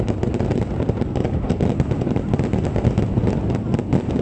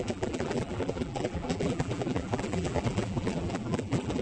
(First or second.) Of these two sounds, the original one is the first